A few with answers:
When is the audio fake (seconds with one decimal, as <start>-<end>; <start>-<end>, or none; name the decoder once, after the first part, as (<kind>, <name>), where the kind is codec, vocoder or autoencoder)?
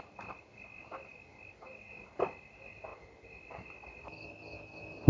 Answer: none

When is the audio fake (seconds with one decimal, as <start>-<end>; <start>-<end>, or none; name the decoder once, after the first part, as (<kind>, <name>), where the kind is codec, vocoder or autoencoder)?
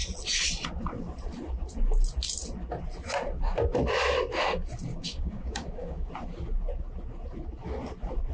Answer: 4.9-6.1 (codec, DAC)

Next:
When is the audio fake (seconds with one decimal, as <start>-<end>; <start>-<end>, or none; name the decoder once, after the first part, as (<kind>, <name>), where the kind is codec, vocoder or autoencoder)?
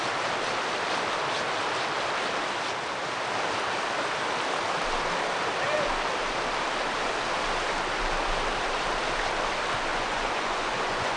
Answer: 9.9-11.2 (vocoder, Vocos)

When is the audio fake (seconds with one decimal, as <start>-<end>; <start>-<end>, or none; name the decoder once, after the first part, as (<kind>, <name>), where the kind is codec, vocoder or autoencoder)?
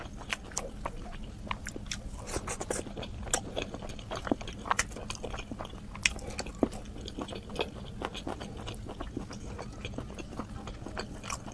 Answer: none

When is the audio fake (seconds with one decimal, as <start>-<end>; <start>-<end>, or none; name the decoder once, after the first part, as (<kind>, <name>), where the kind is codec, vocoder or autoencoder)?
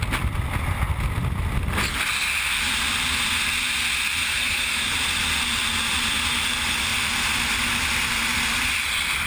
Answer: 4.2-4.9 (autoencoder, DAC-VAE)